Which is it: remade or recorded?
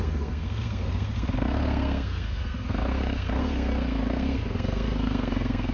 remade